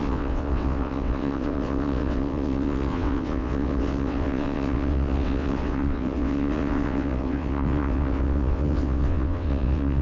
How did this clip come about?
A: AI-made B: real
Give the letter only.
A